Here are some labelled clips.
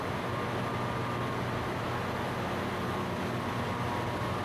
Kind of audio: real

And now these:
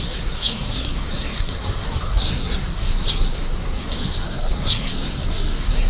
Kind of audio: fake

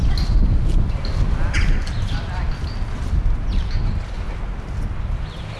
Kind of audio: real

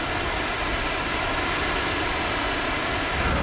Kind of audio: real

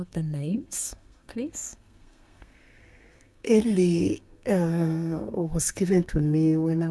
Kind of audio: fake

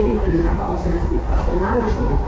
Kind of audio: fake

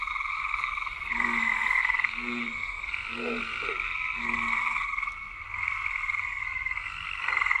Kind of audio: fake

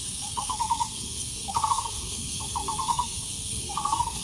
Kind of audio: fake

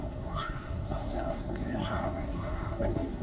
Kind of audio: fake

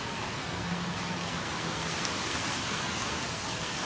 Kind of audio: fake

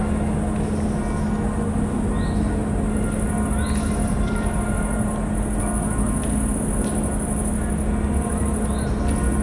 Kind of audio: real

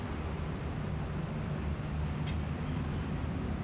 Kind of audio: real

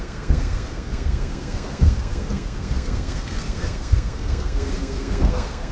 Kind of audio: fake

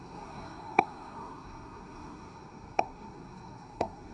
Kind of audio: fake